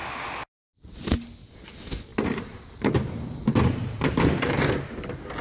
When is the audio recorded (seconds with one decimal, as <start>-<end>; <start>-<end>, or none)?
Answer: 0.0-2.1